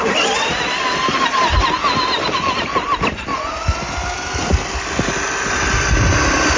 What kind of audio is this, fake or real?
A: real